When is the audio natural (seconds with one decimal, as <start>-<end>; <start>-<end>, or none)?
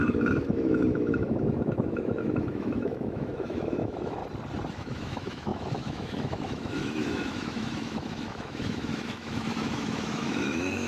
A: 4.2-4.7